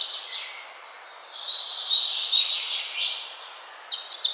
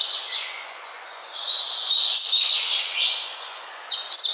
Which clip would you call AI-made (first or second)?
second